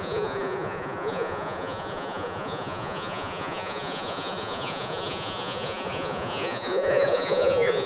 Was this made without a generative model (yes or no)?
no